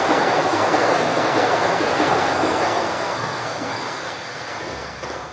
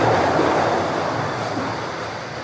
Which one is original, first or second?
second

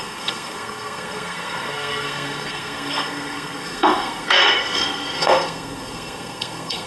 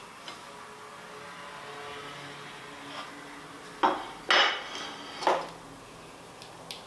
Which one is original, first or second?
second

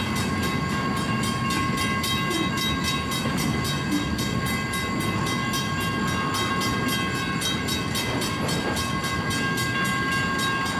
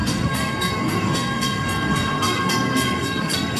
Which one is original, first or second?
first